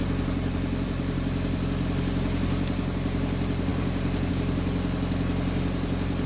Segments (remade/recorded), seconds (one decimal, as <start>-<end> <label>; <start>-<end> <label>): 0.0-6.3 recorded